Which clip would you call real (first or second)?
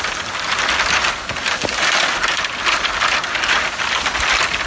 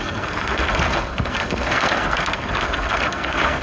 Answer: first